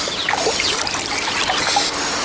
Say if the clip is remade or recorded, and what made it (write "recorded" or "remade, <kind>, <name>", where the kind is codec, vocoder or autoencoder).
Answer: recorded